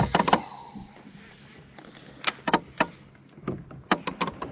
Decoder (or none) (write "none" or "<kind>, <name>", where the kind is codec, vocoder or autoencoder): none